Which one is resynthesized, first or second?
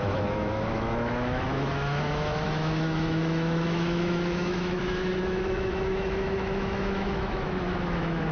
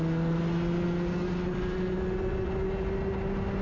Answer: first